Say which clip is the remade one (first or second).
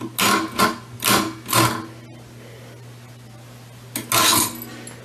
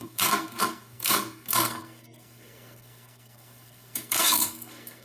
second